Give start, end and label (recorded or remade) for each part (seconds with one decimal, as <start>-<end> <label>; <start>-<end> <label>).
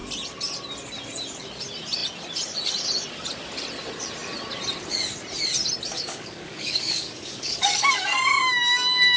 0.0-5.9 recorded; 5.9-9.2 remade